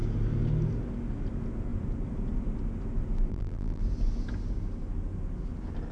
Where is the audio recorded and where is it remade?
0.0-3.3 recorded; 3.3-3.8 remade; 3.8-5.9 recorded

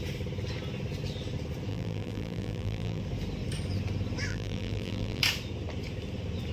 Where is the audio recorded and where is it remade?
0.0-1.7 recorded; 1.7-3.0 remade; 3.0-4.3 recorded; 4.3-5.2 remade; 5.2-6.5 recorded

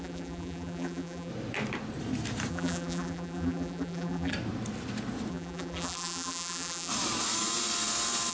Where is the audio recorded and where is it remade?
0.0-1.3 remade; 1.3-2.5 recorded; 2.5-4.3 remade; 4.3-5.3 recorded; 5.3-6.9 remade; 6.9-8.3 recorded